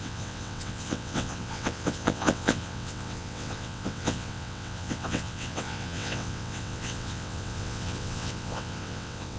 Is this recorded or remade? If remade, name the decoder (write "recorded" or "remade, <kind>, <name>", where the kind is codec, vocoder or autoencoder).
remade, vocoder, WaveNeXt